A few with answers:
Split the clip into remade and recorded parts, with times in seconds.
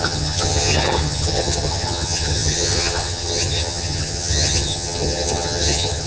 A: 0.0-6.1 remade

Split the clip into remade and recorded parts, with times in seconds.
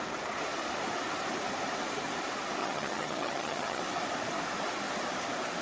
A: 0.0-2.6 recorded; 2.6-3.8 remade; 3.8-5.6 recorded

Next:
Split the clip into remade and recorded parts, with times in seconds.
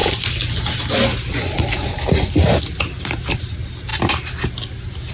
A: 0.0-5.1 recorded